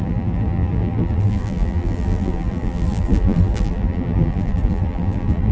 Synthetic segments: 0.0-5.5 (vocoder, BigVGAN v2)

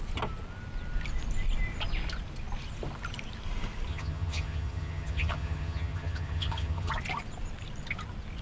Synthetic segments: 3.9-6.9 (vocoder, HiFi-GAN)

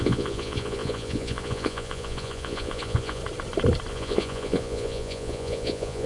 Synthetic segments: 0.0-3.2 (vocoder, Vocos); 3.9-6.1